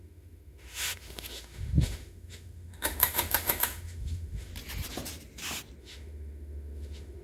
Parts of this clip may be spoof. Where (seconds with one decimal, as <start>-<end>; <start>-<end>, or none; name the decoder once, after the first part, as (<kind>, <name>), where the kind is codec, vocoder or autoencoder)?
0.0-4.5 (autoencoder, DAC-VAE); 5.8-7.2